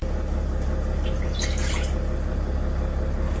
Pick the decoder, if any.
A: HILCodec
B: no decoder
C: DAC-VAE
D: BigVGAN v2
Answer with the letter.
B